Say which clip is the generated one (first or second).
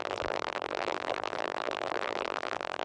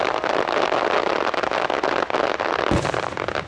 first